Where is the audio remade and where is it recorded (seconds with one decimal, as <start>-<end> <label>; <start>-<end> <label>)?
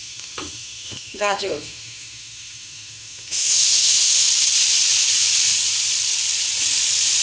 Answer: 0.0-4.3 remade; 4.3-7.2 recorded